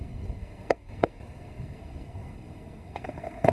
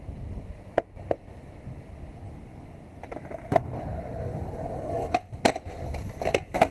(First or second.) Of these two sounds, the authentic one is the second